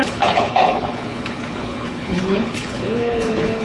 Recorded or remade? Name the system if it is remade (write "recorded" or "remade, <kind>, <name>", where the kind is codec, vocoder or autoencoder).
remade, codec, HILCodec